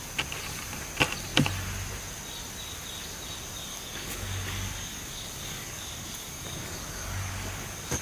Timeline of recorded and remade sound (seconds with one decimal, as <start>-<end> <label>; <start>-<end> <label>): 0.0-3.7 recorded; 3.7-8.0 remade

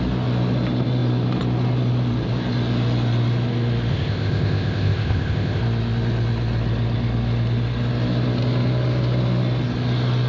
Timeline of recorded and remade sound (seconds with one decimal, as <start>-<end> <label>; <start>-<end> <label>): 0.0-3.9 recorded; 3.9-5.6 remade; 5.6-10.3 recorded

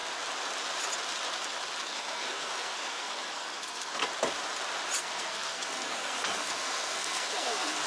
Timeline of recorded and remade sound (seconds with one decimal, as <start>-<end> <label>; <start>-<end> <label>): 0.0-1.8 recorded; 1.8-4.0 remade; 4.0-5.0 recorded; 5.0-7.9 remade

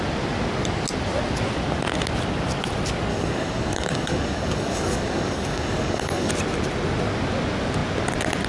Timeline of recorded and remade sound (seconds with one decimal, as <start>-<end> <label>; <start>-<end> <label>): 0.0-3.1 recorded; 3.1-6.3 remade; 6.3-8.5 recorded

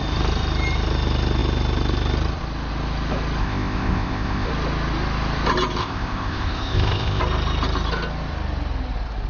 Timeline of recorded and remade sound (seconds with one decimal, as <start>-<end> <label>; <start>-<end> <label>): 0.0-3.4 recorded; 3.4-4.5 remade; 4.5-5.8 recorded; 5.8-7.2 remade; 7.2-9.3 recorded